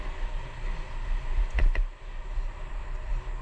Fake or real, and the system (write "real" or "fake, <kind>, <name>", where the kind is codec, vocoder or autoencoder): real